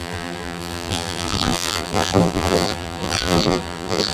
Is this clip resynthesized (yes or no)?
yes